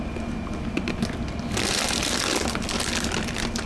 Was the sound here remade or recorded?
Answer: recorded